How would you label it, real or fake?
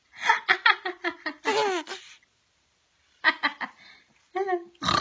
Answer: real